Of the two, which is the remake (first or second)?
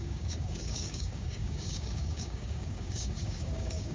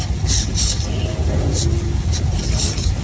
first